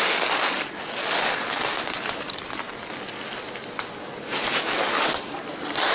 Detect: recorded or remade recorded